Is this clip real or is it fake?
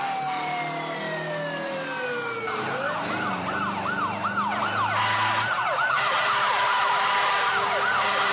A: real